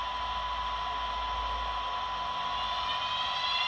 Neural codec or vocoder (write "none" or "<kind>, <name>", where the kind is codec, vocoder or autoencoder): none